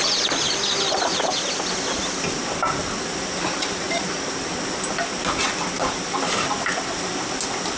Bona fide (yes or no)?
yes